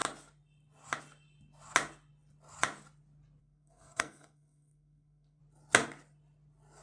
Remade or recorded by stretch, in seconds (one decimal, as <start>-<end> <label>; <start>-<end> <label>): 0.0-3.4 recorded; 3.4-5.4 remade; 5.4-6.8 recorded